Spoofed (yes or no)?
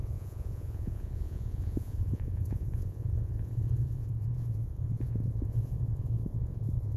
yes